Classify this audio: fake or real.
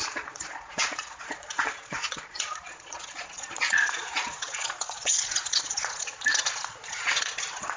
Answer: fake